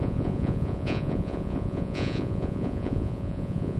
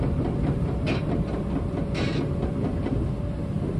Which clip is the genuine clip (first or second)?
second